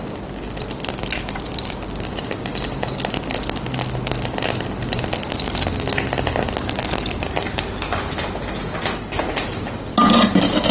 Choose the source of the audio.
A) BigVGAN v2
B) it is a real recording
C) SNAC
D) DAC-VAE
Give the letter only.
B